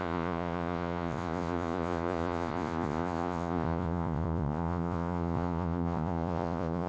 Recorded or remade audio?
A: remade